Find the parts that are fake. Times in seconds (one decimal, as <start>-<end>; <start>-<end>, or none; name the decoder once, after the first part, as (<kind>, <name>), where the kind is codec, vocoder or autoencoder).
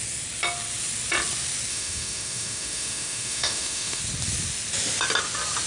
1.7-4.0 (autoencoder, DAC-VAE)